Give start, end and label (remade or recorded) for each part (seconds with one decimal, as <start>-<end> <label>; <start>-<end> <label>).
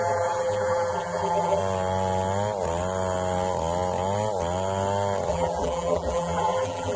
0.0-1.6 remade; 1.6-5.3 recorded; 5.3-7.0 remade